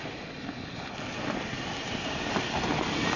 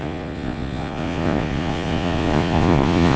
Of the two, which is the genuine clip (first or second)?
first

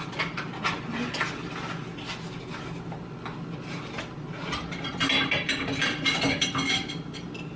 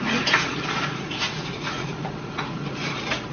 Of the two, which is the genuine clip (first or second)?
first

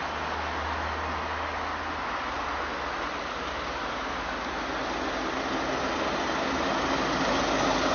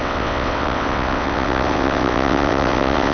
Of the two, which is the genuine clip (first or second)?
first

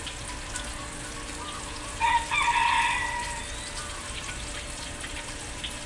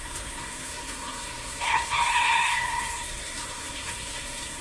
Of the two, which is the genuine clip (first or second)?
first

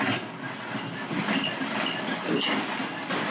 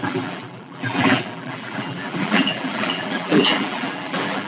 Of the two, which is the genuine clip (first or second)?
first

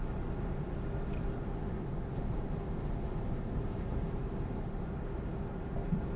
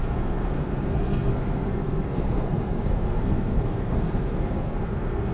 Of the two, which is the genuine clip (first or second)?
first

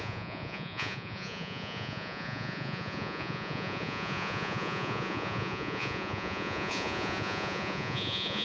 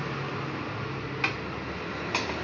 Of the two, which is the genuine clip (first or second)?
second